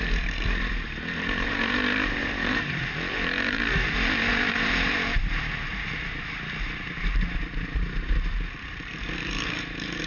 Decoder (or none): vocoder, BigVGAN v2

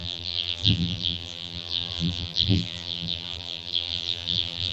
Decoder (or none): vocoder, BigVGAN v2